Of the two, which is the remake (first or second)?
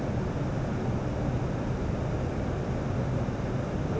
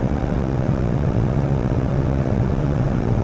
second